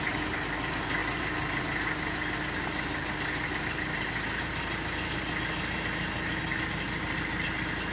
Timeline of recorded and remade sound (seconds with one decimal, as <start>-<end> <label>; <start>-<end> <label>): 0.0-7.9 recorded